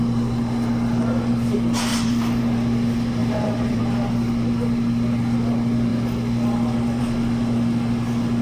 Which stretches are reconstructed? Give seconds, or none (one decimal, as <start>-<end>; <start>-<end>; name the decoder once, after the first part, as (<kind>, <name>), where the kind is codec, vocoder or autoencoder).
1.9-2.4 (vocoder, BigVGAN v2); 3.2-3.8